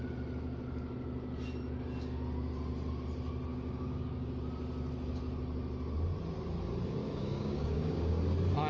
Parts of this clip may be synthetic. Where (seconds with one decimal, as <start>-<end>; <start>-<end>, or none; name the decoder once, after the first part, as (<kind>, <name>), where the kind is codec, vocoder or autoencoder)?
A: 3.5-4.3 (codec, DAC); 7.0-8.2